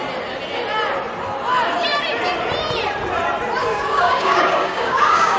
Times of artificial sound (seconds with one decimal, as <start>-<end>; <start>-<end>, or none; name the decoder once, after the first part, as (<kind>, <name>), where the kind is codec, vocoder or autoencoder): 3.6-5.4 (codec, DAC)